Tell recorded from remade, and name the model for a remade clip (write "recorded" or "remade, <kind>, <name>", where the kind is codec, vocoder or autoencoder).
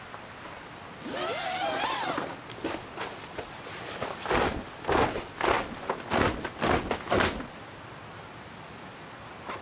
recorded